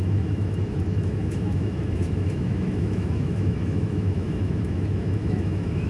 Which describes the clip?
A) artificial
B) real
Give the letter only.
A